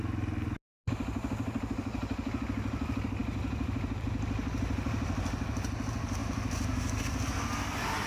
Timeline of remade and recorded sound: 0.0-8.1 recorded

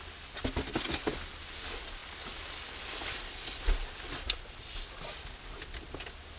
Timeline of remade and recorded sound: 0.0-6.4 recorded